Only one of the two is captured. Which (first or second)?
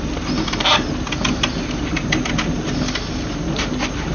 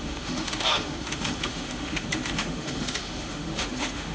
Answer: first